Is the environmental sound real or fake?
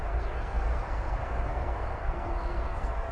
fake